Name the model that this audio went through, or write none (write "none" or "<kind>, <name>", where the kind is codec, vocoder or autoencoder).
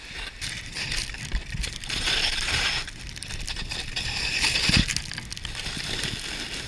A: none